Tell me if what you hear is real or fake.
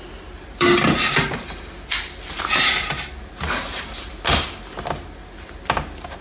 real